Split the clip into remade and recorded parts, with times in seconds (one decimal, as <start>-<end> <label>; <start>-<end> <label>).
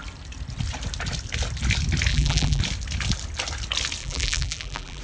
0.0-2.1 recorded; 2.1-2.6 remade; 2.6-4.0 recorded; 4.0-5.0 remade